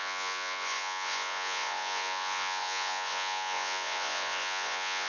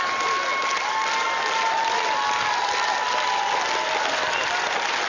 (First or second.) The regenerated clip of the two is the first